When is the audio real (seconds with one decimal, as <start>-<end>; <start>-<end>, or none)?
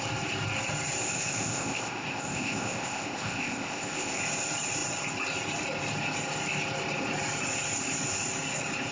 0.0-1.0; 4.2-8.9